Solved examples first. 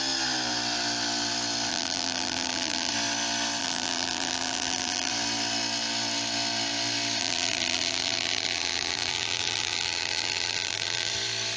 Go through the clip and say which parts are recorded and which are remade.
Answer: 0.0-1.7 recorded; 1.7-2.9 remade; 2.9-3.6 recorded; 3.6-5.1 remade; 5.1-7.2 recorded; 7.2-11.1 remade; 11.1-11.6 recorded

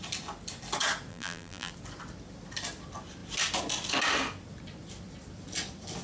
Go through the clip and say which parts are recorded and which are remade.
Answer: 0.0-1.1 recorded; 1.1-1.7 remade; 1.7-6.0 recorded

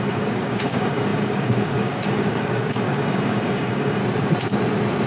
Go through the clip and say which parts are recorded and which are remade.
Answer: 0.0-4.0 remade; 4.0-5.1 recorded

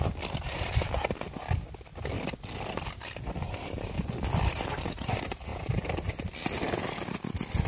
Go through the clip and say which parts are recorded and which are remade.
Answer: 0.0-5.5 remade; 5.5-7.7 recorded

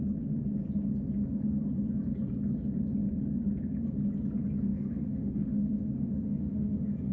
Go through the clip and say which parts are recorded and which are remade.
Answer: 0.0-4.7 recorded; 4.7-7.1 remade

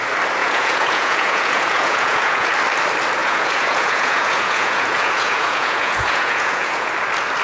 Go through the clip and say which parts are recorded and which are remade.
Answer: 0.0-0.4 recorded; 0.4-2.5 remade; 2.5-3.2 recorded; 3.2-6.9 remade; 6.9-7.4 recorded